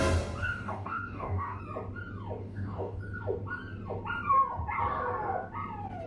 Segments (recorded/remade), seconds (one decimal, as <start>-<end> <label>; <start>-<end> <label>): 0.0-0.4 recorded; 0.4-1.6 remade; 1.6-2.4 recorded; 2.4-3.0 remade; 3.0-6.1 recorded